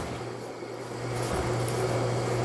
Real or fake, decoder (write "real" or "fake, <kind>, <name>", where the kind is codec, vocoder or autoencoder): real